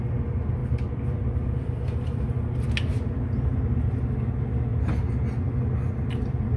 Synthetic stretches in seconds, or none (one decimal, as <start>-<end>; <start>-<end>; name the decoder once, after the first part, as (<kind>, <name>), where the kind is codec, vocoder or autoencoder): none